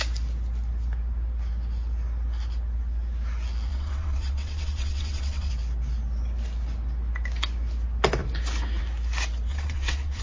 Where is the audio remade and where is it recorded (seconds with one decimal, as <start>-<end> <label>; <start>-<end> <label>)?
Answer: 0.0-3.7 recorded; 3.7-5.5 remade; 5.5-9.5 recorded; 9.5-10.2 remade